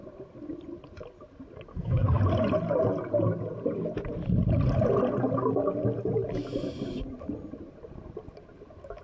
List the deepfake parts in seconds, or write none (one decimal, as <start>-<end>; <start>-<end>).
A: 1.7-2.2